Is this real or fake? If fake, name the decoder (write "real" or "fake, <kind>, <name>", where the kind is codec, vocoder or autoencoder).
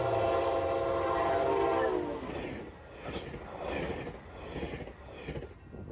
real